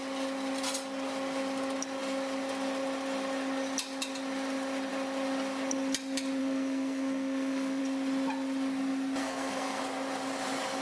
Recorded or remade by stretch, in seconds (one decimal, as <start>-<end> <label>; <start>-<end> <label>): 0.0-6.4 recorded; 6.4-7.8 remade; 7.8-9.2 recorded; 9.2-9.8 remade; 9.8-10.8 recorded